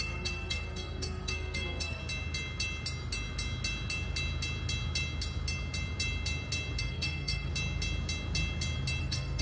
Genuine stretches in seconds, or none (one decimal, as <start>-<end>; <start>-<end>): 2.0-6.8; 7.5-9.0